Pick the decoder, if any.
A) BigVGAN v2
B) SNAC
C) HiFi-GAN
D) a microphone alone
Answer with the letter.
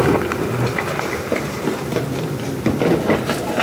D